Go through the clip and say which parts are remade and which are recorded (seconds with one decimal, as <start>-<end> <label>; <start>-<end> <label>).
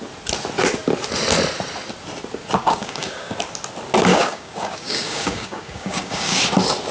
0.0-2.6 recorded; 2.6-3.3 remade; 3.3-4.1 recorded; 4.1-6.4 remade; 6.4-6.9 recorded